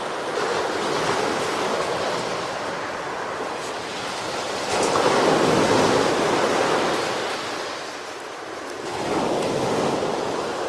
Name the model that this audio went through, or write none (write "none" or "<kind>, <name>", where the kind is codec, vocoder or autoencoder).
none